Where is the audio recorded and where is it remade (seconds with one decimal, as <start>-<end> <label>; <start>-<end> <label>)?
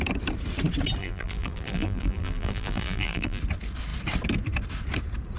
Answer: 0.0-1.0 recorded; 1.0-3.4 remade; 3.4-5.4 recorded